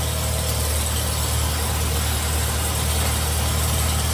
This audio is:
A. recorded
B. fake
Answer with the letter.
A